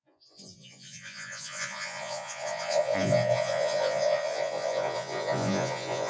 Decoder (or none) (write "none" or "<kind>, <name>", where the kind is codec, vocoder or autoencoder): vocoder, Vocos